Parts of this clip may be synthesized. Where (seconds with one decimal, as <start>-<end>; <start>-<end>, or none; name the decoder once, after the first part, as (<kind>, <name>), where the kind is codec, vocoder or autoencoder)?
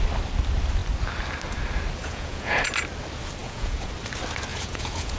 2.0-2.6 (vocoder, Vocos); 3.4-3.9; 4.5-5.2